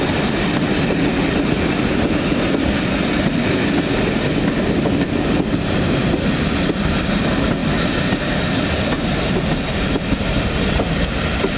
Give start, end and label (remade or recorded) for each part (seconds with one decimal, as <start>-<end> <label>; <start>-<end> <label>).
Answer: 0.0-11.6 recorded